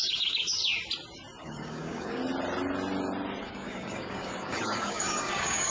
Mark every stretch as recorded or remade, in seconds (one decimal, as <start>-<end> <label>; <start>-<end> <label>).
0.0-0.6 remade; 0.6-1.4 recorded; 1.4-2.2 remade; 2.2-3.4 recorded; 3.4-5.7 remade